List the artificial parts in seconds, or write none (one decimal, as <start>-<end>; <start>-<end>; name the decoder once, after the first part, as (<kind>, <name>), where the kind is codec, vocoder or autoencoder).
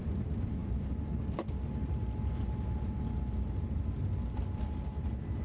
none